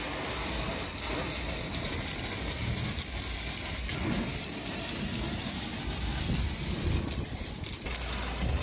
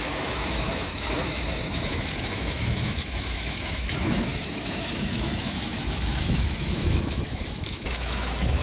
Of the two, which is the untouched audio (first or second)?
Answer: first